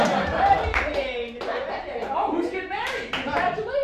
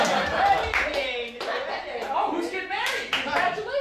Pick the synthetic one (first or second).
first